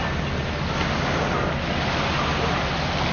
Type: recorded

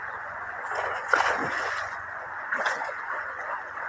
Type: remade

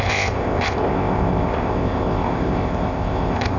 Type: remade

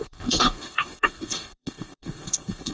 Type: remade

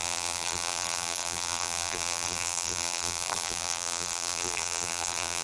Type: remade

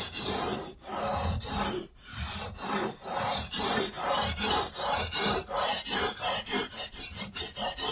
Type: remade